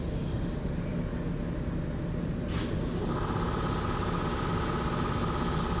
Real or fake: real